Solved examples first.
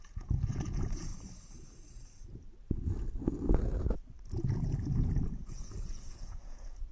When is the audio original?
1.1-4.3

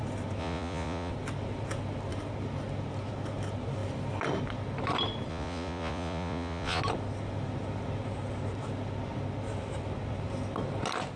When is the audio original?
0.0-0.4; 1.1-5.3; 6.8-11.2